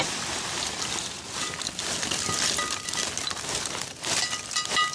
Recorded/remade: recorded